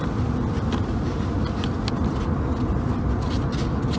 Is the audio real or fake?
real